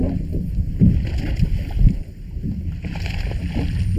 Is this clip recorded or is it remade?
recorded